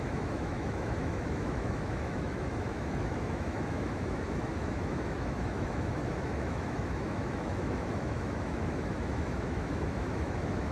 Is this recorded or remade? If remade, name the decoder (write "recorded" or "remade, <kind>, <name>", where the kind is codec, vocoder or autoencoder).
remade, autoencoder, DAC-VAE